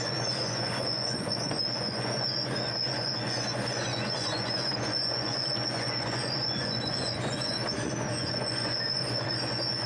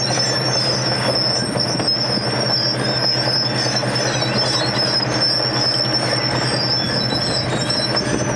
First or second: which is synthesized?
first